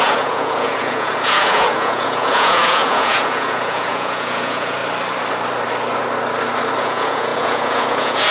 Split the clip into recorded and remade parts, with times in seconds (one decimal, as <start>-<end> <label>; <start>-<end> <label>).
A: 0.0-4.8 remade; 4.8-6.8 recorded; 6.8-8.3 remade